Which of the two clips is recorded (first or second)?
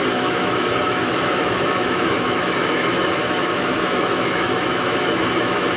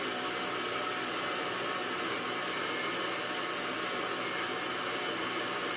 second